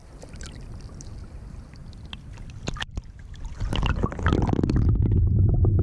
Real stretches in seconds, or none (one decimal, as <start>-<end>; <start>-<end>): 0.0-5.8